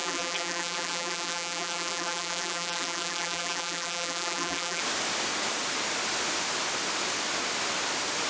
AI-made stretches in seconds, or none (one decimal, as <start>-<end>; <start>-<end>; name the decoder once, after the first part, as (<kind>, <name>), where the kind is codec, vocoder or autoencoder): 0.0-4.8 (vocoder, BigVGAN v2)